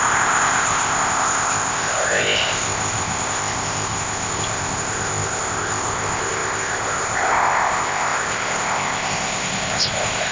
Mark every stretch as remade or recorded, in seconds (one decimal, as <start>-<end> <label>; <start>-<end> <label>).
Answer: 0.0-10.3 remade

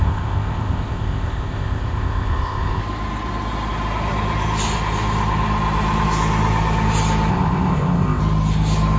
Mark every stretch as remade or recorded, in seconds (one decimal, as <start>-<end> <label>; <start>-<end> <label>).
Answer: 0.0-2.8 remade; 2.8-7.3 recorded; 7.3-8.2 remade; 8.2-9.0 recorded

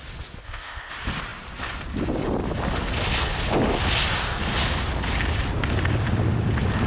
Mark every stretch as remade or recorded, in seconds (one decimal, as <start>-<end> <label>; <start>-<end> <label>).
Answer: 0.0-0.4 recorded; 0.4-0.9 remade; 0.9-6.9 recorded

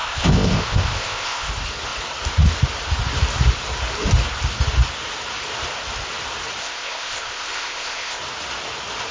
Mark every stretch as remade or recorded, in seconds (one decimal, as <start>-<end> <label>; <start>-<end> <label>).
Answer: 0.0-1.5 remade; 1.5-6.6 recorded; 6.6-8.2 remade; 8.2-9.1 recorded

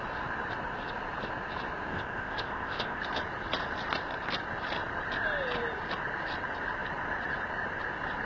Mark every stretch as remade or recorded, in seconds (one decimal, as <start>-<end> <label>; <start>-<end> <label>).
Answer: 0.0-1.9 recorded; 1.9-3.0 remade; 3.0-8.3 recorded